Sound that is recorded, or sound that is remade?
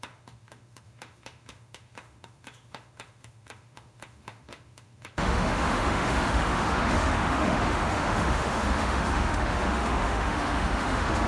remade